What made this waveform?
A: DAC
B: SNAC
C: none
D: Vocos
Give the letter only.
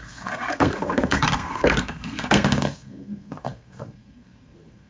B